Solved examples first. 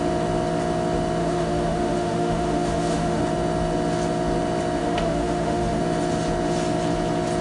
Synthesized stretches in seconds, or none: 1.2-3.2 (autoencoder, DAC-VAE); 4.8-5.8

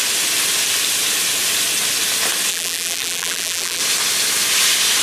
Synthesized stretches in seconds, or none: 2.5-3.8 (vocoder, BigVGAN v2)

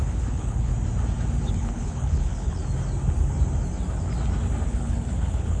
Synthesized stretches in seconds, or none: 0.0-0.7 (codec, HILCodec); 1.5-2.6; 4.7-5.6